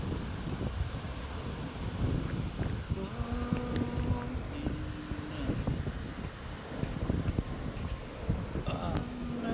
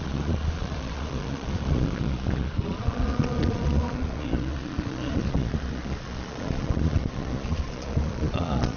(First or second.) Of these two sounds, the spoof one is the second